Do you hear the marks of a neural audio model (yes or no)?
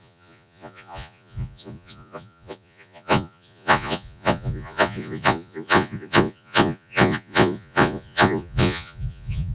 yes